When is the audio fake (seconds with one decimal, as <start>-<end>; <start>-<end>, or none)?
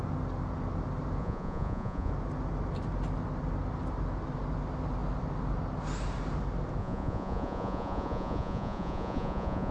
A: 1.2-2.1; 6.8-9.7